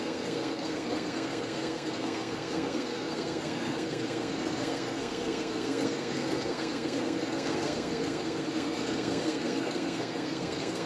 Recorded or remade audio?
remade